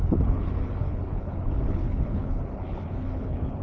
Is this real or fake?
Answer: fake